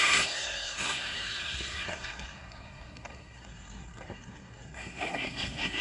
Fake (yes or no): yes